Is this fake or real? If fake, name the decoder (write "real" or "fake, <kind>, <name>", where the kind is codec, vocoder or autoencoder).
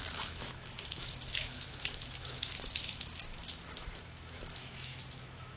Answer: fake, autoencoder, DAC-VAE